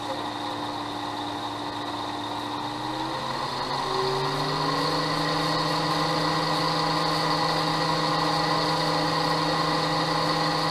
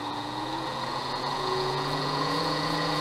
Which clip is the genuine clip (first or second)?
first